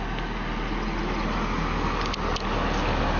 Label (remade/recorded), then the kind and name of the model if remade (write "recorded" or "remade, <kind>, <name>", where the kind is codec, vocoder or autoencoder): recorded